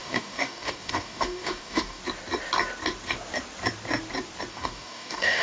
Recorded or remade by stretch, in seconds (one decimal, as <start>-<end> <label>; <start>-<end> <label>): 0.0-2.0 remade; 2.0-4.5 recorded; 4.5-5.4 remade